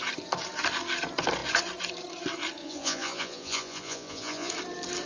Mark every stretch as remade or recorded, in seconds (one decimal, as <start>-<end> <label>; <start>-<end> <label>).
0.0-2.6 recorded; 2.6-4.5 remade; 4.5-5.1 recorded